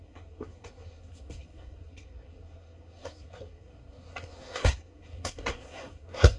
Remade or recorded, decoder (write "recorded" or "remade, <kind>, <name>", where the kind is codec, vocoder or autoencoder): remade, codec, SNAC